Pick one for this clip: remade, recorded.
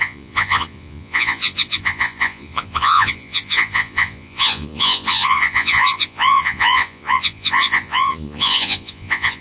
remade